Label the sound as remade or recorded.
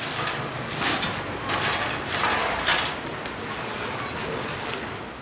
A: recorded